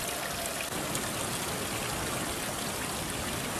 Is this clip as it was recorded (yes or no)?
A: yes